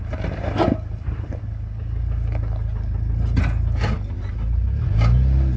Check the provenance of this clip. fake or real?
real